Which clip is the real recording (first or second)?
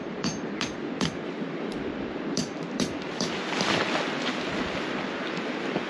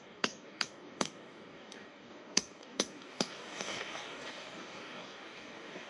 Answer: first